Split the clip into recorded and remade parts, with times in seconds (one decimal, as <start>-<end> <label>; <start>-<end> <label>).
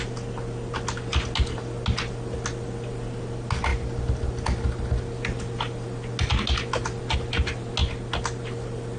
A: 0.0-9.0 recorded